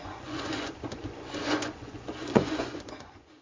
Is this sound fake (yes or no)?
yes